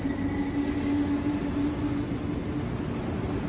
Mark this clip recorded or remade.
recorded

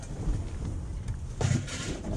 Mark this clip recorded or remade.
recorded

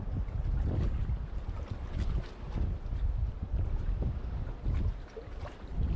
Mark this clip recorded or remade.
recorded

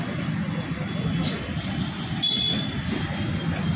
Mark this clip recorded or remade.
remade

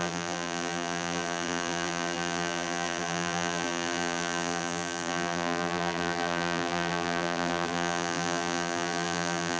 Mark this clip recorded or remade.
remade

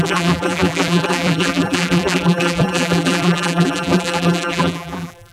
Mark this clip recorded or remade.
remade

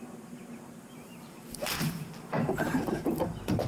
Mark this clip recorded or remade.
remade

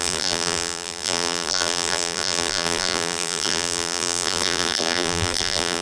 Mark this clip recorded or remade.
remade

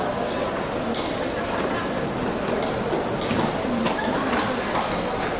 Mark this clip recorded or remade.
remade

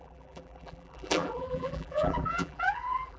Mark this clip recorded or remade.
remade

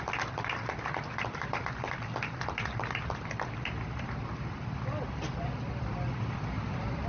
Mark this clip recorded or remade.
recorded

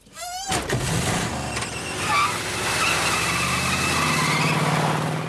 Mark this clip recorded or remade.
recorded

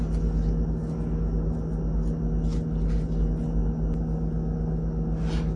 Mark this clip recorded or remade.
recorded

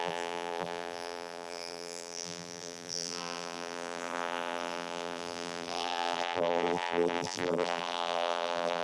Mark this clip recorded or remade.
remade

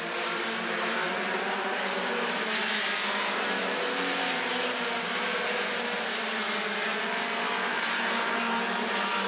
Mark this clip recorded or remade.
remade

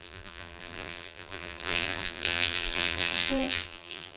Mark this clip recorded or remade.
remade